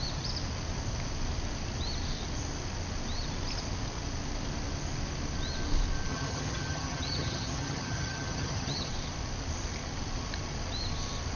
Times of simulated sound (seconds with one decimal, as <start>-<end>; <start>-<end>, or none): 6.1-8.9